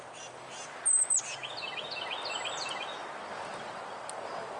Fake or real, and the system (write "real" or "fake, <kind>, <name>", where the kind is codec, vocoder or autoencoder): real